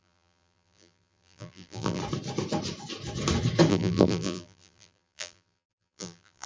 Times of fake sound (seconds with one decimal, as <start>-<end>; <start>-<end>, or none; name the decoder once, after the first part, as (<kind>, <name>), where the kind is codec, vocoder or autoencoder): 0.0-2.0 (vocoder, BigVGAN v2); 3.7-6.5